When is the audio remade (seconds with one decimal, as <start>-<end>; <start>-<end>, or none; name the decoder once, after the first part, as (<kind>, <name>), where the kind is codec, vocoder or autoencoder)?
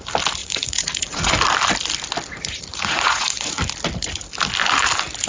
0.4-1.3 (vocoder, Vocos); 2.7-3.6